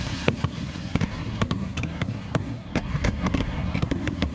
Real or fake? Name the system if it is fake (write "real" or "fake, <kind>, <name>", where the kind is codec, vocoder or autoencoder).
fake, codec, SNAC